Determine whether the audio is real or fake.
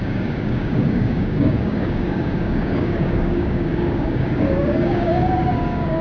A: fake